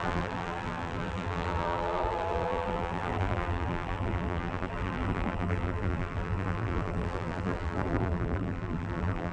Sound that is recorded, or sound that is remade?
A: remade